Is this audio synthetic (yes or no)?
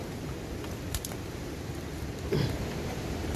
yes